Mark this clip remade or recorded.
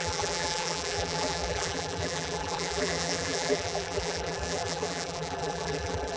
remade